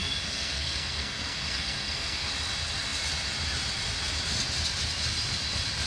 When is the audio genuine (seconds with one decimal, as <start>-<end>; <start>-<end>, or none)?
2.3-5.9